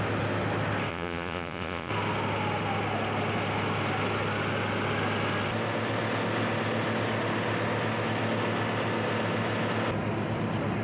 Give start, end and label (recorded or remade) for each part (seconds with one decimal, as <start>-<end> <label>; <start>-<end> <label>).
0.0-0.9 recorded; 0.9-1.9 remade; 1.9-10.8 recorded

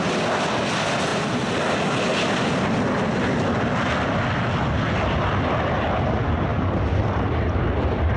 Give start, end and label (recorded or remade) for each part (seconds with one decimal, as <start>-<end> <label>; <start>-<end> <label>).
0.0-6.5 recorded; 6.5-7.0 remade; 7.0-8.2 recorded

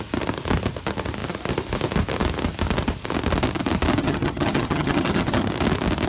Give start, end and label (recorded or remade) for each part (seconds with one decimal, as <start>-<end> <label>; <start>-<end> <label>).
0.0-4.0 recorded; 4.0-5.5 remade; 5.5-6.1 recorded

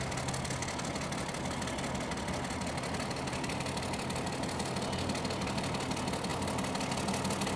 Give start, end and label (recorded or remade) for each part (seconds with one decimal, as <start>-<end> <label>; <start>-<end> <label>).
0.0-7.6 recorded

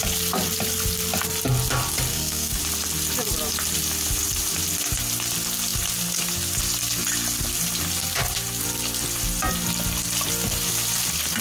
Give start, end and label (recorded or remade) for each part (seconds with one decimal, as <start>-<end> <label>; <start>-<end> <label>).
0.0-2.1 recorded; 2.1-2.6 remade; 2.6-11.4 recorded